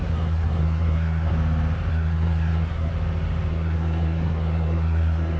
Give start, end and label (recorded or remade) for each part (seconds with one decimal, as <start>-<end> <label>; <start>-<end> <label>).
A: 0.0-1.3 remade; 1.3-1.9 recorded; 1.9-2.9 remade; 2.9-3.5 recorded; 3.5-5.4 remade